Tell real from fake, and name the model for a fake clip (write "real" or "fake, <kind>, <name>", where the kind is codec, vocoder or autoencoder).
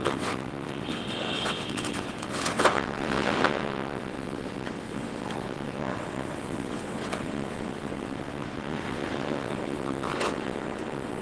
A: fake, vocoder, WaveNeXt